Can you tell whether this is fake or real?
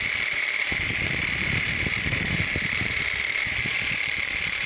fake